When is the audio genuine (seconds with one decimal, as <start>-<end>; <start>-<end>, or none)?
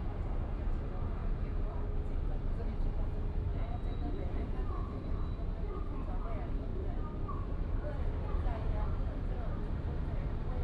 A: 0.0-1.2; 1.7-3.5; 4.9-10.6